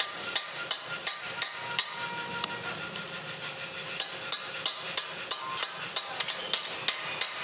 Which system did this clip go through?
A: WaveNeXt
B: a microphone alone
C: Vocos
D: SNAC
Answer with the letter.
B